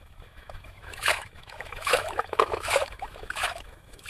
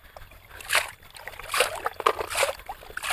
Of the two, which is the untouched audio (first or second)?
second